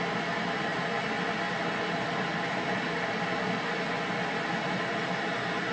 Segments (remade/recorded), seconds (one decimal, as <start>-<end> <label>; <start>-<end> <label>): 0.0-5.7 recorded